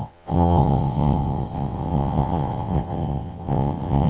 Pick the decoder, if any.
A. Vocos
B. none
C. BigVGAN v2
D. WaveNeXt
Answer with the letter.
D